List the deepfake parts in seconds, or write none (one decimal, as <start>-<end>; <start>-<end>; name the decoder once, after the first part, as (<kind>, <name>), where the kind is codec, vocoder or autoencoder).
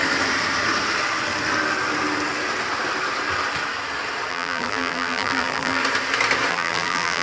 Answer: 4.3-5.8 (vocoder, BigVGAN v2); 6.5-7.2